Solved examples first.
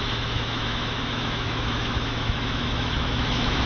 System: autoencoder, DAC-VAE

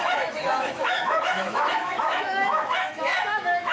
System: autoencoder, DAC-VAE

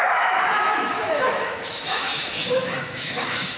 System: autoencoder, DAC-VAE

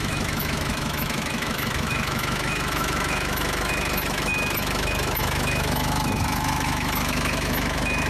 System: autoencoder, DAC-VAE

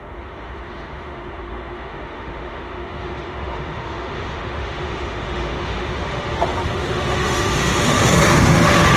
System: autoencoder, DAC-VAE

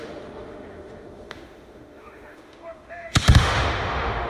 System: autoencoder, DAC-VAE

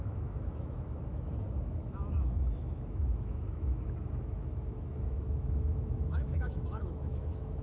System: autoencoder, DAC-VAE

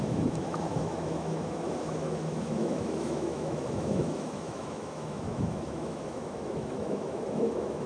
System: autoencoder, DAC-VAE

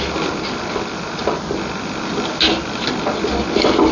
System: none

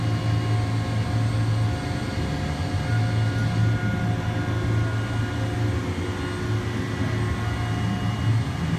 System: none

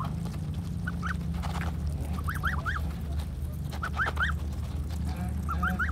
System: none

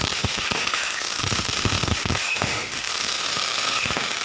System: autoencoder, DAC-VAE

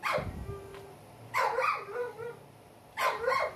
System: none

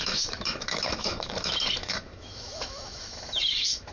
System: autoencoder, DAC-VAE